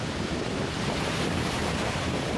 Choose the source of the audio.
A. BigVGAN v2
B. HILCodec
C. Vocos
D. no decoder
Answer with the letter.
A